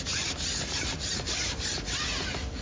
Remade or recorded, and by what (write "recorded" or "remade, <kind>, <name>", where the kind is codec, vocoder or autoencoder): recorded